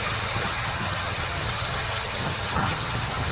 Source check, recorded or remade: remade